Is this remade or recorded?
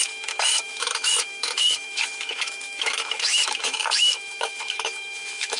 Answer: remade